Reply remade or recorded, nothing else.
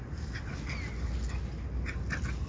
recorded